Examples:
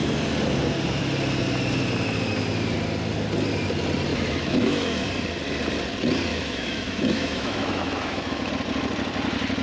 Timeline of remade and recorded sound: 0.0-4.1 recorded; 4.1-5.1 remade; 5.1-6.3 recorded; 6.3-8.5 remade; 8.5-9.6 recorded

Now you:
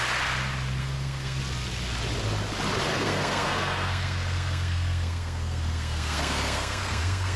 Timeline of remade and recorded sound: 0.0-0.8 recorded; 0.8-1.4 remade; 1.4-2.9 recorded; 2.9-7.4 remade

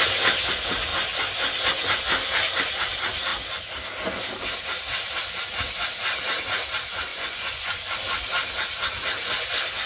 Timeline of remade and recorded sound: 0.0-7.1 recorded; 7.1-8.0 remade; 8.0-9.9 recorded

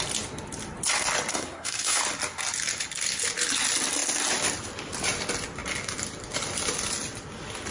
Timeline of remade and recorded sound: 0.0-1.3 recorded; 1.3-2.0 remade; 2.0-7.7 recorded

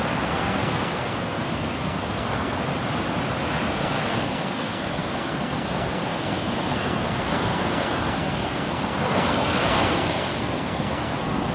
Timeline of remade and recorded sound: 0.0-2.7 remade; 2.7-3.7 recorded; 3.7-11.5 remade

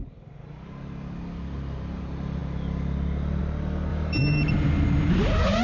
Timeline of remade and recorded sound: 0.0-3.9 recorded; 3.9-4.5 remade; 4.5-5.6 recorded

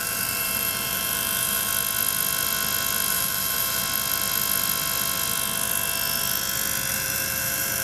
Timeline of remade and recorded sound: 0.0-1.7 remade; 1.7-3.1 recorded; 3.1-3.8 remade; 3.8-6.9 recorded; 6.9-7.8 remade